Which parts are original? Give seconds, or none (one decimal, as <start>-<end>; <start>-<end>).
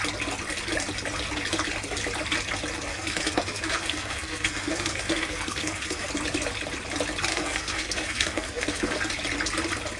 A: 0.0-2.9; 6.1-7.3; 9.0-10.0